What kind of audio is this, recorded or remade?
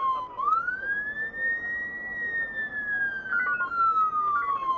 recorded